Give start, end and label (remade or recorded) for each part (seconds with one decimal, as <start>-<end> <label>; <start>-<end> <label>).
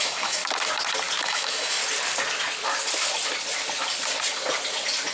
0.0-0.4 remade; 0.4-1.2 recorded; 1.2-1.8 remade; 1.8-5.1 recorded